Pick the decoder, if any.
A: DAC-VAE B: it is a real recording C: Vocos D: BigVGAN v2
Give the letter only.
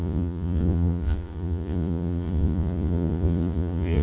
C